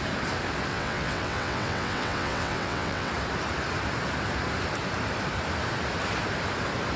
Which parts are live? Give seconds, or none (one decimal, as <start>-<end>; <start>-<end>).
0.0-0.7; 3.1-7.0